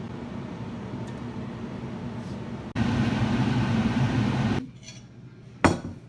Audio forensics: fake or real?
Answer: real